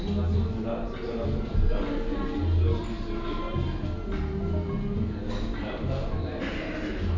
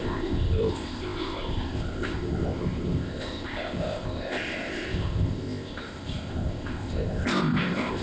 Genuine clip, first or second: first